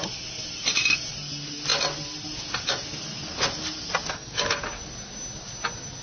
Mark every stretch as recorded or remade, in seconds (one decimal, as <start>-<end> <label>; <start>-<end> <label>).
0.0-6.0 recorded

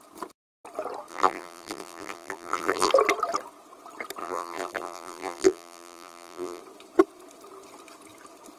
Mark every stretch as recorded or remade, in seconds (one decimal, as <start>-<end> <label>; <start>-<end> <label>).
0.0-1.1 recorded; 1.1-2.9 remade; 2.9-4.2 recorded; 4.2-6.6 remade; 6.6-8.6 recorded